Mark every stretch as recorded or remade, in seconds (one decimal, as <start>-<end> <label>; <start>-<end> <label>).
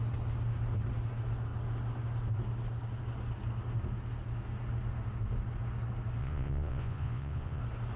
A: 0.0-6.2 recorded; 6.2-7.6 remade; 7.6-8.0 recorded